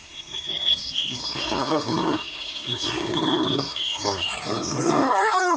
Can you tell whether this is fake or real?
fake